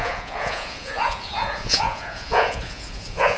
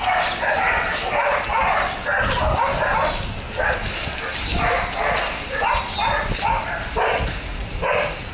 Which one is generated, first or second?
first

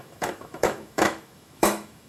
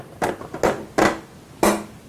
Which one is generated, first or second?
first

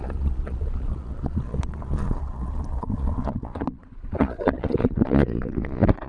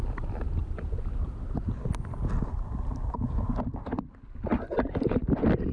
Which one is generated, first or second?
first